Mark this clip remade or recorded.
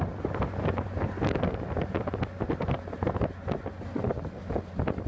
recorded